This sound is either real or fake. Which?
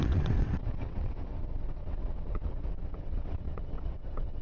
fake